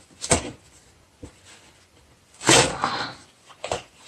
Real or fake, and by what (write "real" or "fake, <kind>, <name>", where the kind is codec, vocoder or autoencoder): fake, vocoder, Vocos